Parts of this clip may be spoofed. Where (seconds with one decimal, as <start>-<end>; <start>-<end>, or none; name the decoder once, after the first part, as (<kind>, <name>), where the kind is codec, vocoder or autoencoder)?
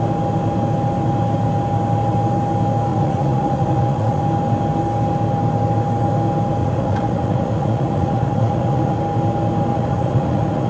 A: 2.9-4.2 (vocoder, Vocos); 6.6-9.0; 9.7-10.7